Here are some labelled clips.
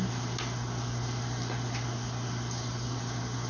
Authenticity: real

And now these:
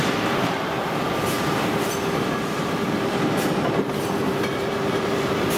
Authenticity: fake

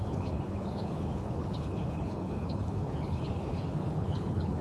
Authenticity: fake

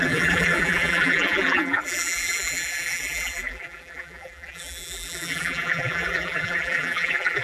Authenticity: fake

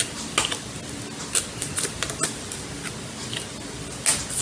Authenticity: real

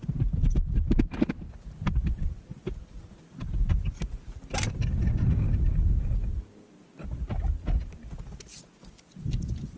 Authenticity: real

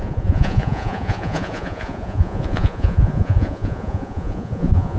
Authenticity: fake